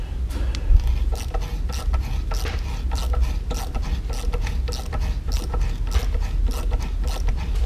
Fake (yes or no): no